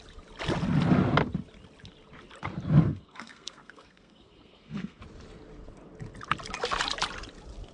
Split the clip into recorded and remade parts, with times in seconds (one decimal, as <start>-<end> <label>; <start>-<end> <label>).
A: 0.0-2.8 recorded; 2.8-5.0 remade; 5.0-7.7 recorded

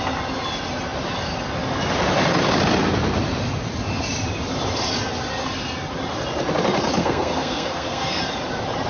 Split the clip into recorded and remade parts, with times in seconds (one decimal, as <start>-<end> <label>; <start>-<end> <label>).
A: 0.0-7.0 recorded; 7.0-8.2 remade; 8.2-8.9 recorded

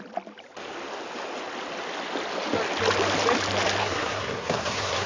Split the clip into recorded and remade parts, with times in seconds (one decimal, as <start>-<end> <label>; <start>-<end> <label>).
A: 0.0-3.8 recorded; 3.8-5.1 remade